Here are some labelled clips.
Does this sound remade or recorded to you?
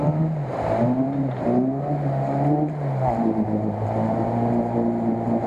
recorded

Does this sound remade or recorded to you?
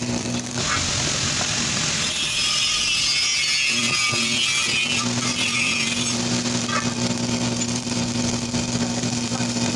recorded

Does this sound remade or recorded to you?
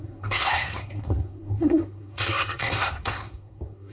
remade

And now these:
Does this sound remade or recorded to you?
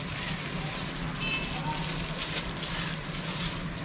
recorded